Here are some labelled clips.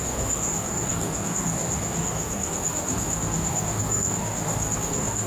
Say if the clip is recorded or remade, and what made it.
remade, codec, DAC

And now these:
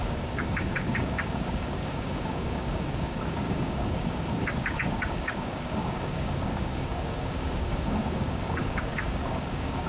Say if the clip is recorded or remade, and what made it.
remade, codec, DAC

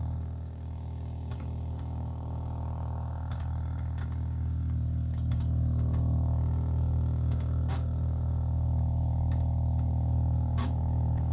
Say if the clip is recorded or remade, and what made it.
remade, codec, DAC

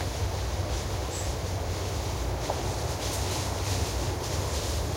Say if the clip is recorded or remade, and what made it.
recorded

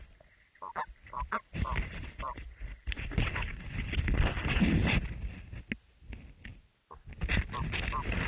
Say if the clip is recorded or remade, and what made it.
recorded